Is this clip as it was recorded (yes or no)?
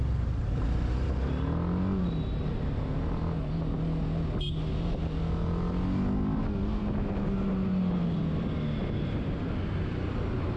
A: yes